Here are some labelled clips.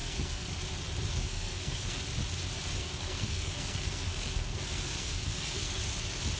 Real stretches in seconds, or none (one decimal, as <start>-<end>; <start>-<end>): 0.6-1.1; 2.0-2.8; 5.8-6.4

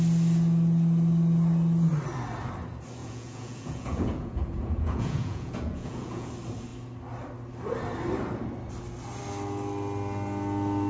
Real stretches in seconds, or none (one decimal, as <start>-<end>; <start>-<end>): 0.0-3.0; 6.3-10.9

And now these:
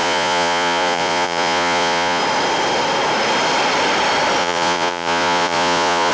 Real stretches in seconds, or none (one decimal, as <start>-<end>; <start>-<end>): 2.2-4.4

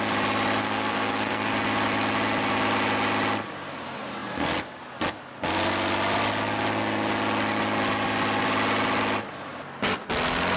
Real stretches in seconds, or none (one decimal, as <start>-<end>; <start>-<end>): 0.0-0.6; 1.5-10.6

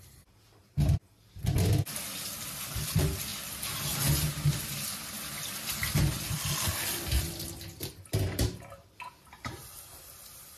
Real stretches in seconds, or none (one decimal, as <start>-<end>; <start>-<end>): 3.3-6.3